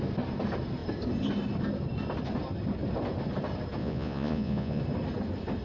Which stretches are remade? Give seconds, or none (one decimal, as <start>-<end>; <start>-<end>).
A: 3.8-4.8